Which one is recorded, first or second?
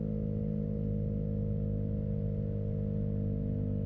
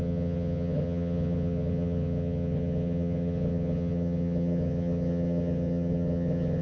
first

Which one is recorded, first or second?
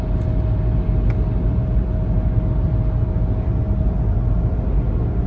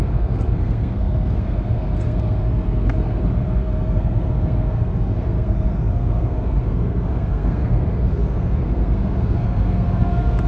first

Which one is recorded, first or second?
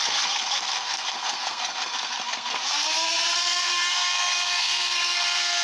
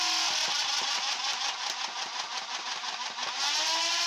second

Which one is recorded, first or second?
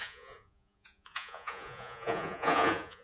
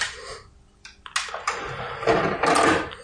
second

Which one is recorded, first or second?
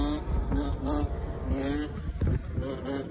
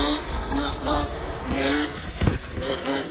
first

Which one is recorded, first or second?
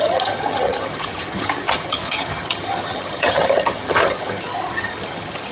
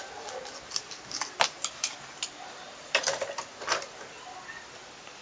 second